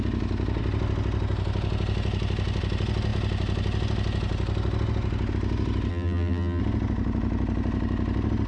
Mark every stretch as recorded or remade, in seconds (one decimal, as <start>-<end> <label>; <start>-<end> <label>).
0.0-5.9 recorded; 5.9-6.6 remade; 6.6-8.5 recorded